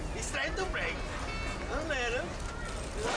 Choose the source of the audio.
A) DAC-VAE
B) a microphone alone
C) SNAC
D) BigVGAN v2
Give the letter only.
B